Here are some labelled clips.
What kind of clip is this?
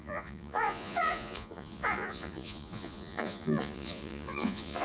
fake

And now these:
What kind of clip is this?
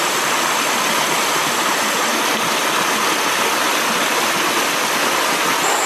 real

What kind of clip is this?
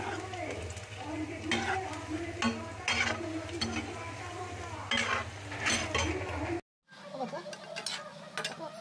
real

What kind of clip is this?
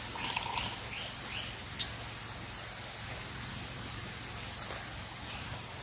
real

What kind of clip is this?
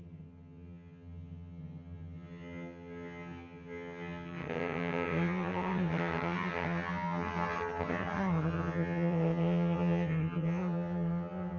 fake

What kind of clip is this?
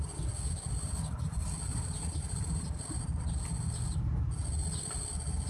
real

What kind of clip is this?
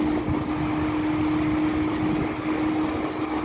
real